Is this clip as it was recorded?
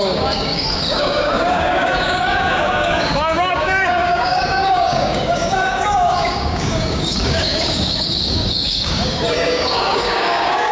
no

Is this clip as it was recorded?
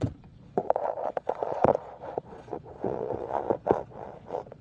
no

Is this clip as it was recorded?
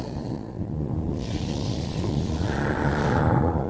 no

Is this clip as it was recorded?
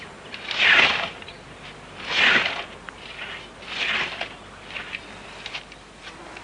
yes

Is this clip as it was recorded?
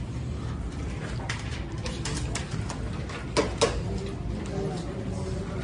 yes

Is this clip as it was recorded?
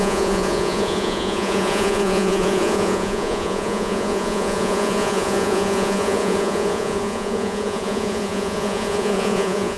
no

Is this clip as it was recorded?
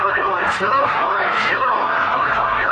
no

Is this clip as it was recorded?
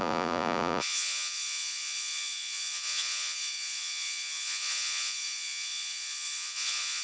no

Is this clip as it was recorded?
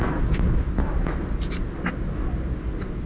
yes